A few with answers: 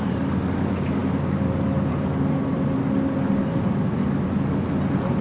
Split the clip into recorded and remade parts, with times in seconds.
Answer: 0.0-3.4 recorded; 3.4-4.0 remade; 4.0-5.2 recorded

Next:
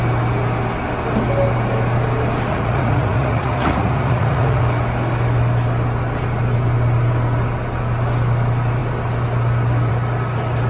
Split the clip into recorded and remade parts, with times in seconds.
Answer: 0.0-2.5 recorded; 2.5-4.6 remade; 4.6-10.7 recorded

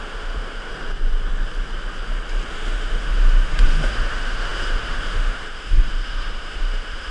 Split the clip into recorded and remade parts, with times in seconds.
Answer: 0.0-0.7 remade; 0.7-2.5 recorded; 2.5-7.1 remade

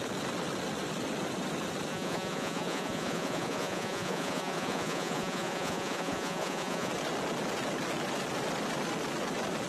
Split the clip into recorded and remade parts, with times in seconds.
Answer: 0.0-1.9 recorded; 1.9-6.9 remade; 6.9-9.7 recorded